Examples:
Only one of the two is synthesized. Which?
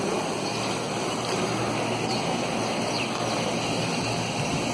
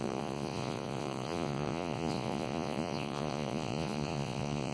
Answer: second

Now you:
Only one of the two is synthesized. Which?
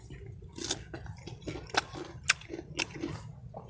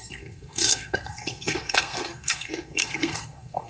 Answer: second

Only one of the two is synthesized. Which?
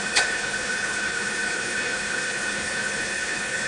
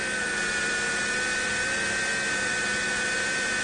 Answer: first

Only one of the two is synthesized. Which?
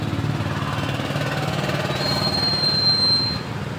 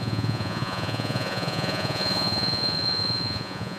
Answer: second